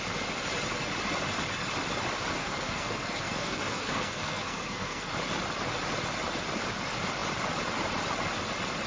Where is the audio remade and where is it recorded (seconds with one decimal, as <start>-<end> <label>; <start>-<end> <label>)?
0.0-2.4 recorded; 2.4-5.1 remade; 5.1-8.9 recorded